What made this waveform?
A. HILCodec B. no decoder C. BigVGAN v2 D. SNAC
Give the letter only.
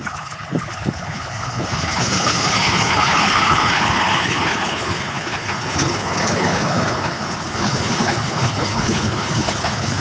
A